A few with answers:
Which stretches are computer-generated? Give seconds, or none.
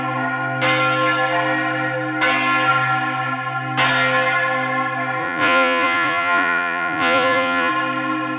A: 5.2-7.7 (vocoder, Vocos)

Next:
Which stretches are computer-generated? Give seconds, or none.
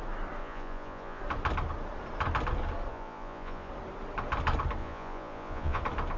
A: 0.4-1.2 (vocoder, Vocos); 2.9-3.7; 4.8-5.8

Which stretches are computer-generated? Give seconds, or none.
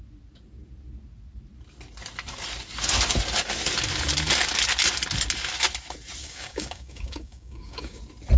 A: 6.2-8.0 (codec, DAC)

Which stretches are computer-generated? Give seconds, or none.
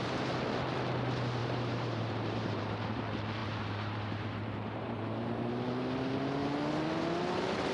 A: 1.4-3.0 (vocoder, BigVGAN v2); 3.4-5.5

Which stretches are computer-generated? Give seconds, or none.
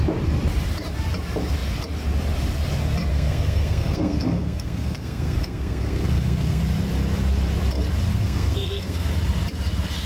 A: 3.1-6.6 (codec, SNAC); 8.1-9.1